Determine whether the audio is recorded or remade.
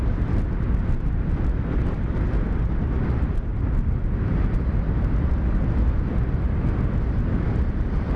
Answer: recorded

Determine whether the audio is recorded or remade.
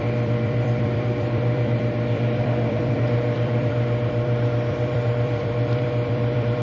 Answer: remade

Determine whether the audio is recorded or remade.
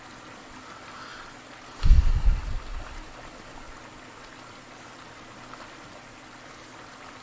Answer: recorded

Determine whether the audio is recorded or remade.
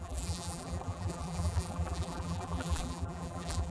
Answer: remade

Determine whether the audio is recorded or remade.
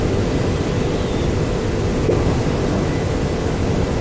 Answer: recorded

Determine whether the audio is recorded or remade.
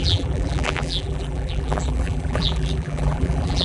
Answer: remade